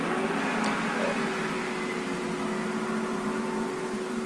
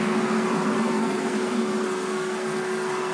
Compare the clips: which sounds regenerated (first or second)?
second